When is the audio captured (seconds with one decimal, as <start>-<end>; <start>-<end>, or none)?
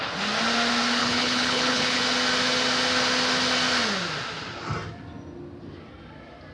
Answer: 0.0-1.0; 2.0-6.5